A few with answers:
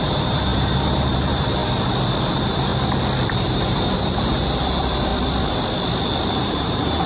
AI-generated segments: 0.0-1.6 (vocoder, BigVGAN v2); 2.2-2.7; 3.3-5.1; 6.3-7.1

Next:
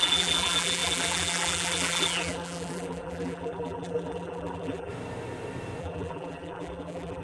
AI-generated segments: 0.0-4.9 (vocoder, BigVGAN v2); 5.8-7.2

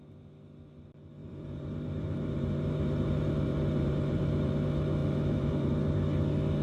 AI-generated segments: 1.2-4.5 (vocoder, BigVGAN v2); 5.0-5.7

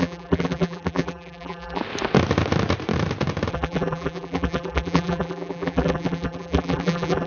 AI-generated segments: 0.0-1.8 (vocoder, BigVGAN v2); 3.5-7.3

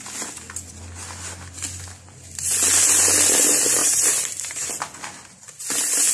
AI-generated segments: 3.8-4.7 (vocoder, BigVGAN v2)

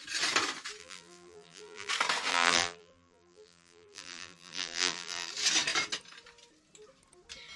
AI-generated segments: 0.8-1.9 (vocoder, BigVGAN v2); 2.3-5.3

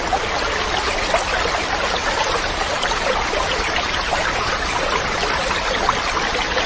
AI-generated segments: 2.0-4.5 (vocoder, BigVGAN v2)